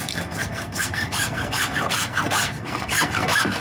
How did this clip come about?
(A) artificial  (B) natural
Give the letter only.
A